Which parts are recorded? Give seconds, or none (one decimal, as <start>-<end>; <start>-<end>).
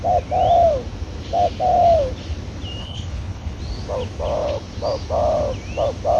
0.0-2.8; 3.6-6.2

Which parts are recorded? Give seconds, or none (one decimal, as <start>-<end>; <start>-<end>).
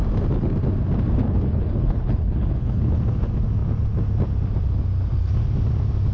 0.0-1.2; 3.0-6.1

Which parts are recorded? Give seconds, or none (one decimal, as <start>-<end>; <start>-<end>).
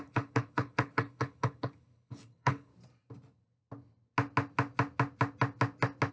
2.7-6.1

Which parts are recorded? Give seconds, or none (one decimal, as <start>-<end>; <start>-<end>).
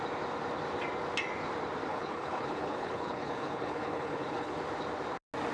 0.0-1.9; 4.5-5.5